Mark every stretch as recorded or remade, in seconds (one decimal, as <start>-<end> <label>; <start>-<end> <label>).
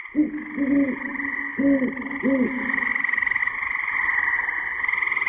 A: 0.0-5.3 recorded